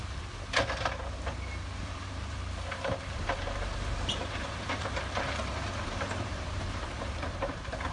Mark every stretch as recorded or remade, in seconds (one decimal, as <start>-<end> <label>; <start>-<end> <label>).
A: 0.0-1.8 recorded; 1.8-7.9 remade

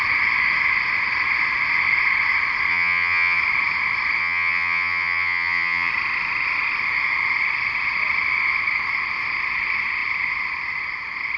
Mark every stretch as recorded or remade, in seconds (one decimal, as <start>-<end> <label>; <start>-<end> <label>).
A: 0.0-2.7 recorded; 2.7-3.4 remade; 3.4-4.2 recorded; 4.2-5.9 remade; 5.9-11.4 recorded

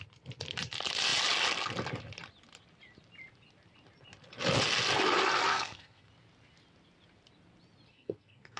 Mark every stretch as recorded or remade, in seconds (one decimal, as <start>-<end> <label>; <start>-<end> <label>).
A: 0.0-5.5 recorded; 5.5-6.1 remade; 6.1-7.9 recorded; 7.9-8.6 remade

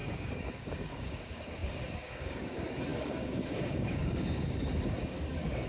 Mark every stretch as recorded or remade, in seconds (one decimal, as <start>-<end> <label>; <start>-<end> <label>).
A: 0.0-5.7 remade

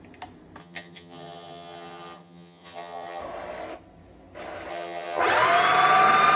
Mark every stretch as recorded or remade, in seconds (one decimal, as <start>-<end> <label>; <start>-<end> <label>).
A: 0.0-0.6 recorded; 0.6-3.2 remade; 3.2-4.7 recorded; 4.7-5.2 remade; 5.2-6.4 recorded